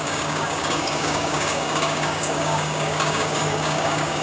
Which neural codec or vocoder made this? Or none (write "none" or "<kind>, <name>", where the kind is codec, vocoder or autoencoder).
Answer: codec, DAC